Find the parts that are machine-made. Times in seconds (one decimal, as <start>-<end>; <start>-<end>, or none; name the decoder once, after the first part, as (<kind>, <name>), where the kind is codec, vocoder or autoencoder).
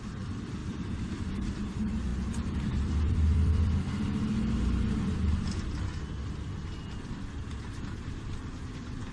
0.0-4.3 (vocoder, BigVGAN v2); 7.4-9.1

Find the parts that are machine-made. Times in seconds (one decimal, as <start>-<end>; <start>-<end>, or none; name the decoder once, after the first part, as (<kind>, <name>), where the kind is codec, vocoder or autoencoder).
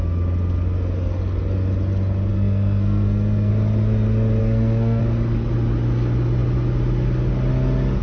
2.3-3.5 (codec, SNAC); 4.4-5.0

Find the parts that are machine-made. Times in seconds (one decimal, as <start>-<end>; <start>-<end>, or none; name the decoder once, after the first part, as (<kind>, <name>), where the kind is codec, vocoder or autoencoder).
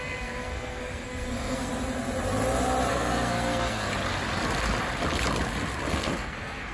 0.0-1.7 (codec, SNAC); 2.9-3.9; 5.9-6.7